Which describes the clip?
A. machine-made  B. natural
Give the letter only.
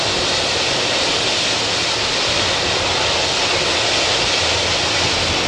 B